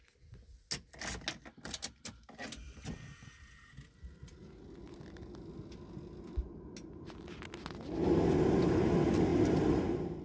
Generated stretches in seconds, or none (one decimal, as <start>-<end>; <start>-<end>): none